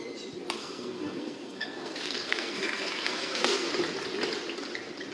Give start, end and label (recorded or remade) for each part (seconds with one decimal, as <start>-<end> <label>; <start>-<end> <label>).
0.0-0.6 recorded; 0.6-3.7 remade; 3.7-5.1 recorded